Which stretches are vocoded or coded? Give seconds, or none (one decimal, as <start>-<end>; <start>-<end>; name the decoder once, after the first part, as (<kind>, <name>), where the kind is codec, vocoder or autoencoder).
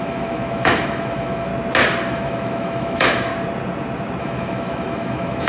0.0-1.5 (autoencoder, DAC-VAE); 2.1-3.3; 4.2-5.5